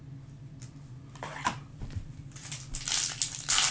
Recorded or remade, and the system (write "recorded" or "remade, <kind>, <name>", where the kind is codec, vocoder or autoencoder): recorded